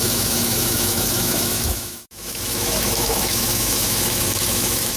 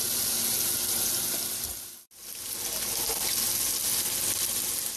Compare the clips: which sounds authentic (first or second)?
second